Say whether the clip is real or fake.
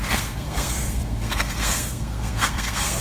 fake